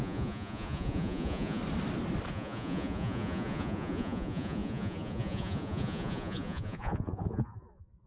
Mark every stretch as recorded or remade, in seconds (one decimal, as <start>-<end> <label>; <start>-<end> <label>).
0.0-1.6 remade; 1.6-2.3 recorded; 2.3-8.1 remade